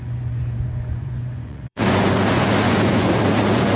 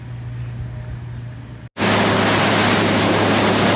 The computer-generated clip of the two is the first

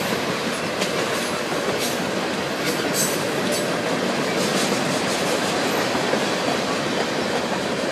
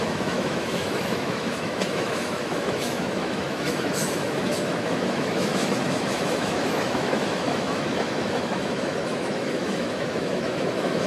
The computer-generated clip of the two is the second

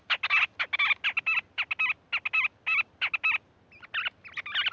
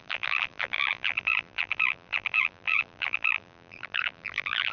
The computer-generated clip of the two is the second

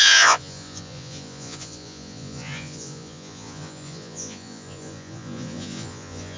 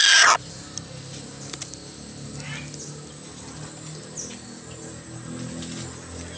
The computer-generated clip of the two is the first